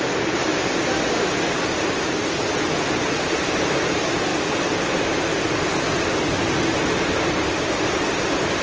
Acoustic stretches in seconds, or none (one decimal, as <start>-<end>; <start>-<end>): 0.5-1.5; 2.2-3.2; 4.3-8.6